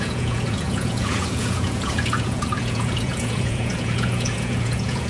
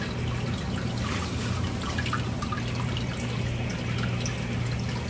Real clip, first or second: second